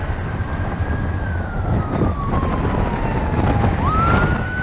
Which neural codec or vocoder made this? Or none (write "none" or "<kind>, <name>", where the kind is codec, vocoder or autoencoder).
none